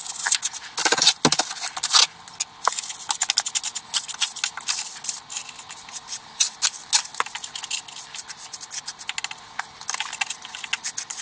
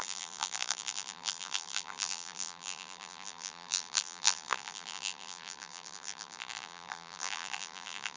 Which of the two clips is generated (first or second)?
second